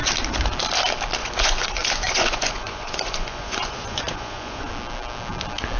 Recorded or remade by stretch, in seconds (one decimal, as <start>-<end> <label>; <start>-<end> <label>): 0.0-1.2 recorded; 1.2-4.7 remade; 4.7-5.8 recorded